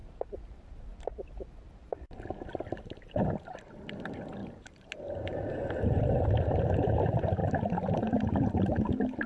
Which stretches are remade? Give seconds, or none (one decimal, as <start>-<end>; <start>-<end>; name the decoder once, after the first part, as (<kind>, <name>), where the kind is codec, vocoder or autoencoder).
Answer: 0.0-0.9 (vocoder, BigVGAN v2); 4.4-5.5; 7.4-8.6